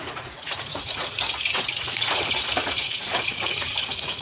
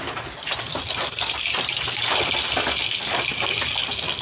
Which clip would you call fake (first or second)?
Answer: first